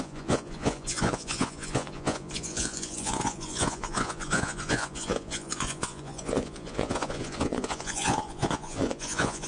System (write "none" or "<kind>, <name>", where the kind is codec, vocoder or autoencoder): vocoder, Vocos